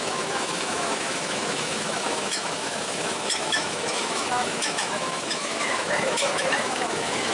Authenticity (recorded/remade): remade